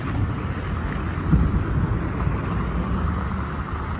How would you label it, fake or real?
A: real